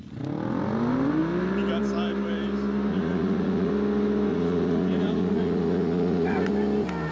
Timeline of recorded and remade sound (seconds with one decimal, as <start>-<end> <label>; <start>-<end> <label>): 0.0-2.9 recorded; 2.9-3.7 remade; 3.7-4.3 recorded; 4.3-6.5 remade; 6.5-7.1 recorded

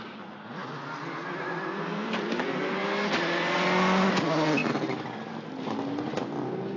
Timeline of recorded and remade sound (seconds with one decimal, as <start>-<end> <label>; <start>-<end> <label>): 0.0-6.8 recorded

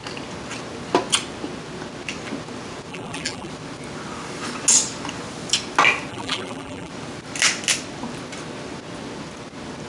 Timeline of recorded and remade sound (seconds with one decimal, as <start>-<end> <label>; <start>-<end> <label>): 0.0-2.9 recorded; 2.9-3.5 remade; 3.5-6.1 recorded; 6.1-6.9 remade; 6.9-9.9 recorded

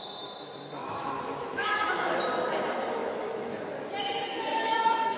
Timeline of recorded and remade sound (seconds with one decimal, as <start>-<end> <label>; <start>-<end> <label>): 0.0-0.8 recorded; 0.8-2.3 remade; 2.3-3.0 recorded; 3.0-3.5 remade; 3.5-4.5 recorded; 4.5-5.2 remade

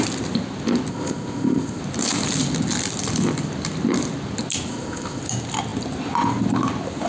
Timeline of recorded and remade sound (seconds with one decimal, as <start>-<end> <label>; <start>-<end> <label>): 0.0-0.9 recorded; 0.9-1.8 remade; 1.8-4.7 recorded; 4.7-5.2 remade; 5.2-7.1 recorded

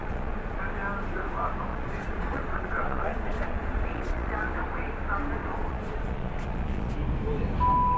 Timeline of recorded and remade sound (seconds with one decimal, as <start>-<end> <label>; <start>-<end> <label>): 0.0-0.6 remade; 0.6-1.7 recorded; 1.7-4.5 remade; 4.5-5.4 recorded; 5.4-6.9 remade; 6.9-8.0 recorded

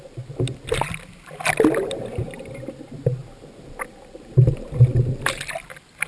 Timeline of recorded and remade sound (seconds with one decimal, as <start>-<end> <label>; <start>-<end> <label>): 0.0-6.1 recorded

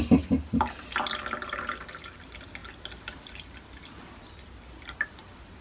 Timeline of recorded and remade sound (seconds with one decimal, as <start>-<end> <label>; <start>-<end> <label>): 0.0-5.6 recorded